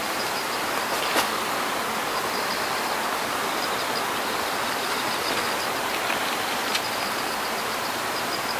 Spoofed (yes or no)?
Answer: no